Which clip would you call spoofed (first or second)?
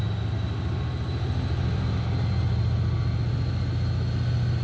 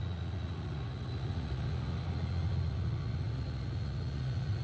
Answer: second